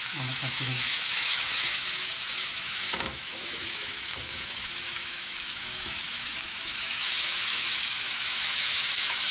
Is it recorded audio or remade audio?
remade